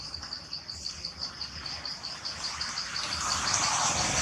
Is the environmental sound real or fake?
real